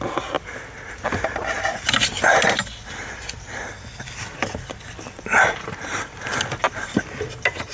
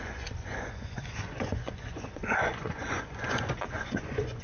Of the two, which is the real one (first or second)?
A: first